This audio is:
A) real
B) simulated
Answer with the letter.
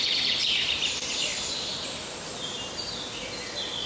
A